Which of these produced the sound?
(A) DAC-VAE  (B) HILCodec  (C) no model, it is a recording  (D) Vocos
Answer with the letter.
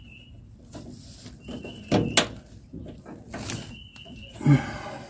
C